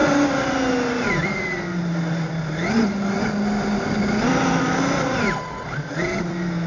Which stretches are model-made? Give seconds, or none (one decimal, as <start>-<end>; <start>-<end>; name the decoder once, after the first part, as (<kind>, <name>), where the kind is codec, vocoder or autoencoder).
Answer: none